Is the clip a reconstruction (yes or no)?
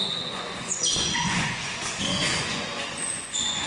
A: yes